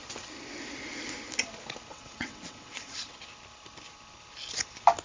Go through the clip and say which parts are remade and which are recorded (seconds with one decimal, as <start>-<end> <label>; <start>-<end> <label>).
0.0-1.9 recorded; 1.9-3.2 remade; 3.2-5.0 recorded